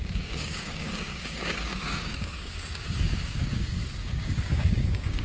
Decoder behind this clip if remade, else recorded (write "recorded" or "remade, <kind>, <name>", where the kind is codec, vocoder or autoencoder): remade, codec, DAC